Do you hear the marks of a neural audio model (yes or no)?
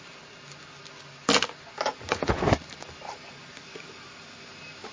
no